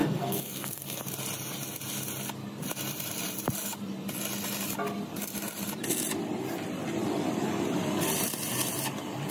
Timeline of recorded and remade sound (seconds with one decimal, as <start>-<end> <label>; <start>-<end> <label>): 0.0-1.0 remade; 1.0-9.3 recorded